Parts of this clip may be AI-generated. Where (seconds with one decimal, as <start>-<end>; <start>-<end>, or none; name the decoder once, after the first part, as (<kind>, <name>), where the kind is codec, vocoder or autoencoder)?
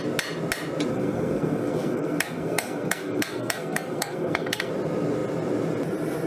0.9-4.7 (codec, SNAC)